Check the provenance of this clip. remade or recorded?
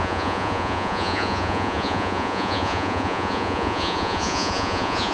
remade